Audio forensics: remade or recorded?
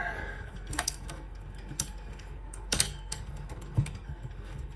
remade